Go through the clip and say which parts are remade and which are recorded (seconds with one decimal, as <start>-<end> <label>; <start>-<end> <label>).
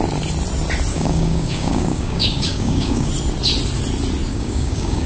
0.0-0.9 recorded; 0.9-3.1 remade; 3.1-4.3 recorded; 4.3-5.1 remade